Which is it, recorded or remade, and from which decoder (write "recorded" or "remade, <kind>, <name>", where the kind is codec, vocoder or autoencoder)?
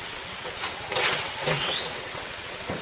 remade, vocoder, WaveNeXt